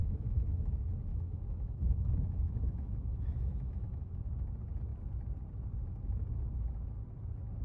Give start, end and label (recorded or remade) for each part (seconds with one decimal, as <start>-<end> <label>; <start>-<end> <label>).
0.0-0.7 remade; 0.7-1.1 recorded; 1.1-4.2 remade; 4.2-7.6 recorded